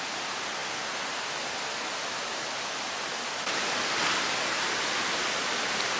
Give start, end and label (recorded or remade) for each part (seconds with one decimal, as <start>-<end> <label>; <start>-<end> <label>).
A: 0.0-6.0 recorded